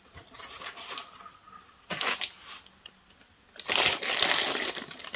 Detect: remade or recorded remade